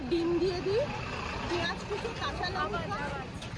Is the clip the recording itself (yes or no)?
yes